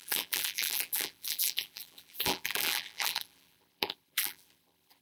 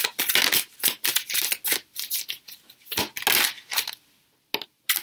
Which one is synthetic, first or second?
first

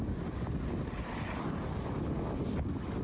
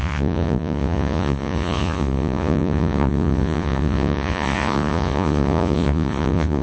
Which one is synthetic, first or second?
second